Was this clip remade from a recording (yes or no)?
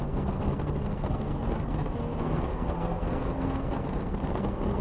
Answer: yes